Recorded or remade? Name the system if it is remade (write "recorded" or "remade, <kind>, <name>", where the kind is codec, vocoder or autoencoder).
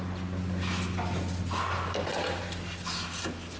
recorded